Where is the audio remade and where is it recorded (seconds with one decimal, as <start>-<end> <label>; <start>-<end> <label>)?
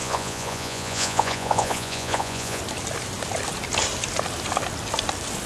0.0-2.6 remade; 2.6-5.5 recorded